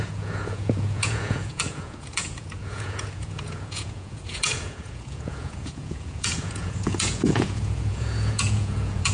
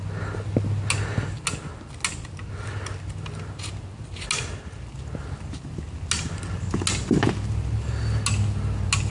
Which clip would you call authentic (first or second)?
second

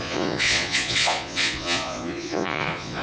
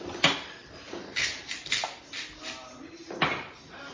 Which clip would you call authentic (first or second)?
second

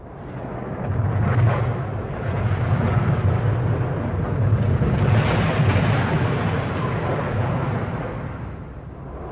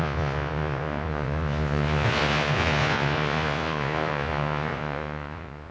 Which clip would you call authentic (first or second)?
first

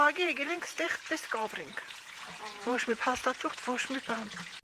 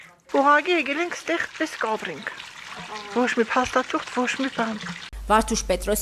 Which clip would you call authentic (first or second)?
second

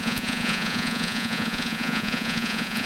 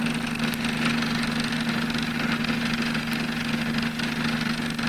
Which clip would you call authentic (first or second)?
second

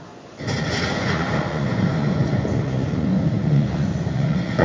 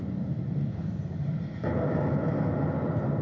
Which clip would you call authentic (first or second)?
second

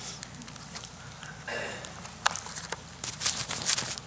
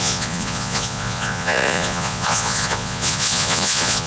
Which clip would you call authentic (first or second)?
first